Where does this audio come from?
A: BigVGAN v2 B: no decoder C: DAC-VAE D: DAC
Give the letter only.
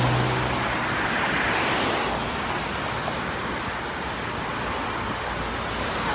B